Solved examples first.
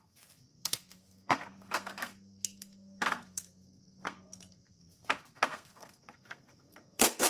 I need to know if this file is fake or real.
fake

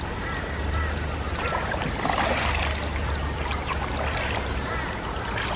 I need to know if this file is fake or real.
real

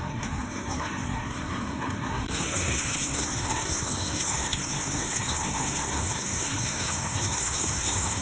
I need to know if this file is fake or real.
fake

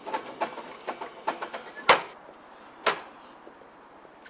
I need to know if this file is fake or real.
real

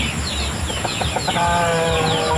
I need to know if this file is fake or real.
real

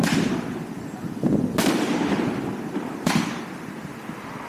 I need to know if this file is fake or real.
real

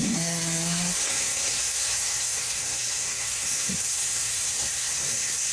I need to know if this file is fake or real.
fake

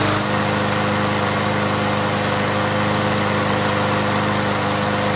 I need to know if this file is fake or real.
real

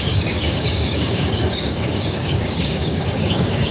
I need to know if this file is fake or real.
fake